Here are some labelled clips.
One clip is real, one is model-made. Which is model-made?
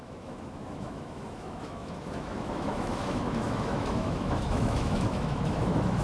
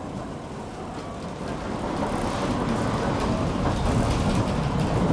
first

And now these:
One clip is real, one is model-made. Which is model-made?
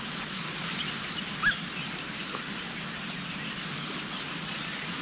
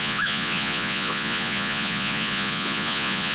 second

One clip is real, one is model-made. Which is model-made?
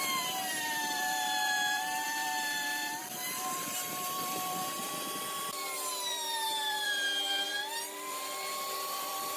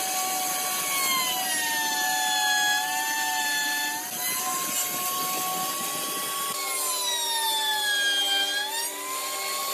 first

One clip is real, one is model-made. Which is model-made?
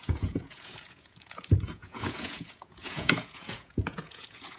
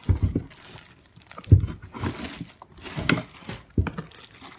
first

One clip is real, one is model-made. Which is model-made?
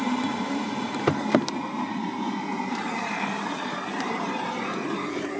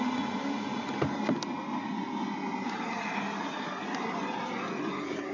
first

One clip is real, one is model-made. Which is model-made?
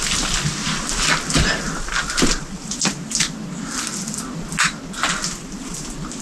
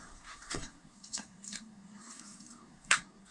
second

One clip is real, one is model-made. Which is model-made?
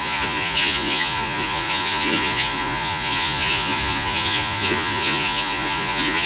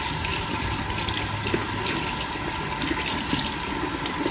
first